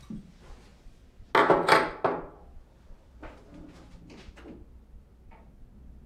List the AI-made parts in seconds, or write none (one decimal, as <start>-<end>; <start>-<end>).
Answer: none